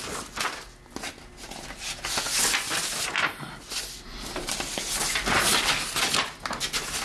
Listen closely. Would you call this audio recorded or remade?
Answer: recorded